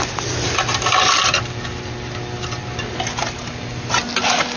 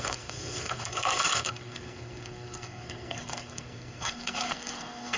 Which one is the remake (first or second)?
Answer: second